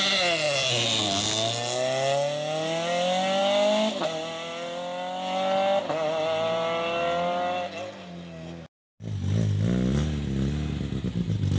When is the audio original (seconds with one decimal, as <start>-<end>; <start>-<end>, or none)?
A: 0.0-11.6

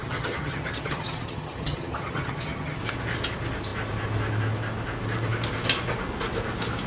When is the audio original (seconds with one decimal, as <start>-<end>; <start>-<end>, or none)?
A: 2.8-6.9